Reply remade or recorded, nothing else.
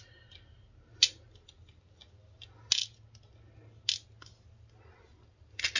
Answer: recorded